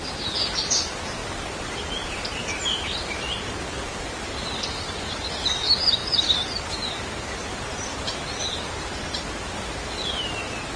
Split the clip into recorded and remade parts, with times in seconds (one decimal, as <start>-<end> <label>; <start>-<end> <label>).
0.0-10.8 recorded